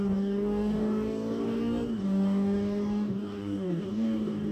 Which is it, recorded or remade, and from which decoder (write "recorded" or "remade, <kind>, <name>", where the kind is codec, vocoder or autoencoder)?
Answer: remade, codec, DAC